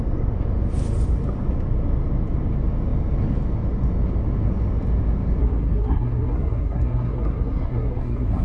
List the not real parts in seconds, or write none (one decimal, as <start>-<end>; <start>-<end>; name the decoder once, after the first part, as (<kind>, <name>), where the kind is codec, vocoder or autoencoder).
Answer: 5.4-8.4 (codec, SNAC)